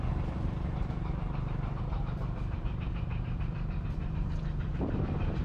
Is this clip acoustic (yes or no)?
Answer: no